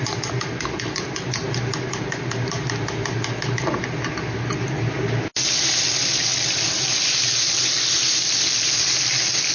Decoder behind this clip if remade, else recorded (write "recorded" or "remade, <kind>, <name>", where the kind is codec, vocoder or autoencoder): recorded